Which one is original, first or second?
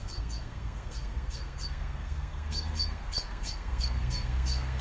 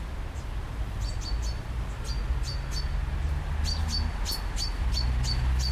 second